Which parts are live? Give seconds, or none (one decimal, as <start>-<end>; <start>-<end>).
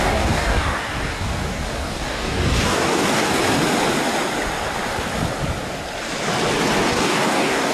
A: 3.4-6.9